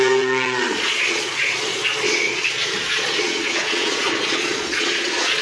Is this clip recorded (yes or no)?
no